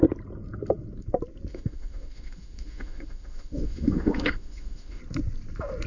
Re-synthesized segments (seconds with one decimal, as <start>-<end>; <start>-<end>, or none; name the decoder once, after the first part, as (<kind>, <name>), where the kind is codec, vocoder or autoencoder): 1.5-5.0 (autoencoder, DAC-VAE)